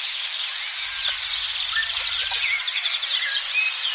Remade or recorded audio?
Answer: recorded